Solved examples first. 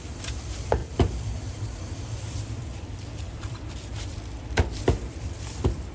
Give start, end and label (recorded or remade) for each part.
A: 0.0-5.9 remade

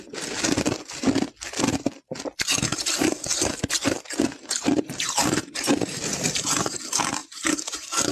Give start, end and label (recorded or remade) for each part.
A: 0.0-2.7 recorded; 2.7-6.8 remade; 6.8-7.2 recorded; 7.2-8.1 remade

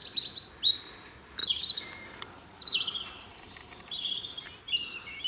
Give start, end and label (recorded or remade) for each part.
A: 0.0-0.5 remade; 0.5-1.4 recorded; 1.4-4.6 remade; 4.6-5.3 recorded

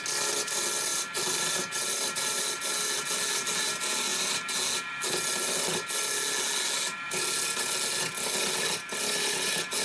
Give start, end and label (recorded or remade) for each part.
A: 0.0-9.8 recorded

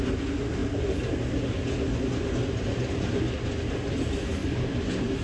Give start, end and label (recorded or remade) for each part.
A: 0.0-5.2 recorded